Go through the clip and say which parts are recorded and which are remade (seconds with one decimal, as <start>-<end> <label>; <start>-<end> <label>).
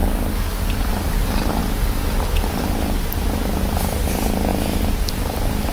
0.0-0.9 remade; 0.9-5.7 recorded